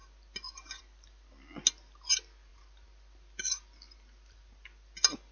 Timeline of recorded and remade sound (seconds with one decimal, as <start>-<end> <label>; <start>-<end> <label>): 0.0-5.3 recorded